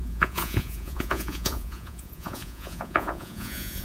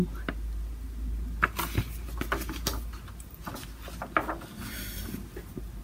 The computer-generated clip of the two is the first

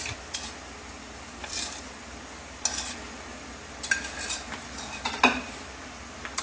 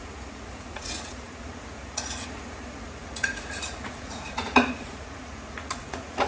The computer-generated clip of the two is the second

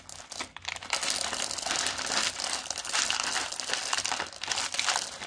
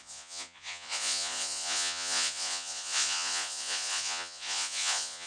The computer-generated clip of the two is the second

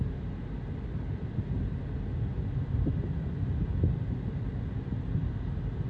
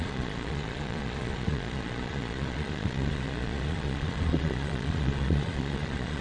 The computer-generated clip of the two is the second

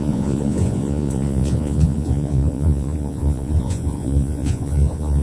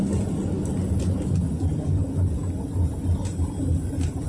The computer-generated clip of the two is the first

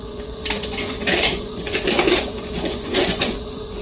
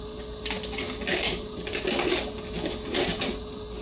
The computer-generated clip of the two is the first